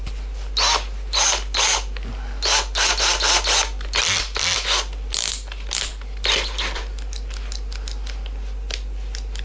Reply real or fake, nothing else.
real